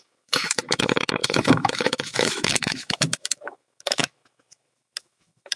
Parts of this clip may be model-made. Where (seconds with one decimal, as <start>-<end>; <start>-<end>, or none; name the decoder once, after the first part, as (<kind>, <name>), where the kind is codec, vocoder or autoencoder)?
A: 0.0-5.6 (autoencoder, DAC-VAE)